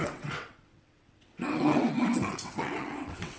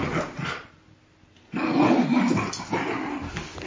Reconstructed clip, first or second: first